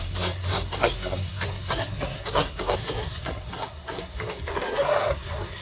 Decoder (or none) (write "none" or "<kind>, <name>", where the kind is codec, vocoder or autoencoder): codec, SNAC